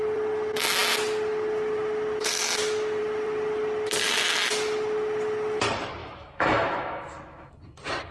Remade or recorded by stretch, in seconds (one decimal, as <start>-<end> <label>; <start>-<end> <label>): 0.0-6.0 recorded; 6.0-7.5 remade; 7.5-8.1 recorded